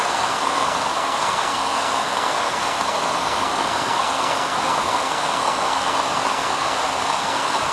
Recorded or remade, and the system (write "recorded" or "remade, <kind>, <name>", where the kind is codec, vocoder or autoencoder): remade, codec, SNAC